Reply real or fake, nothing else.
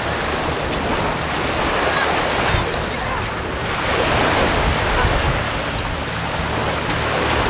real